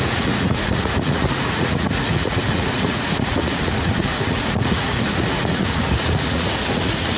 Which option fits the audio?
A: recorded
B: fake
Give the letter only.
B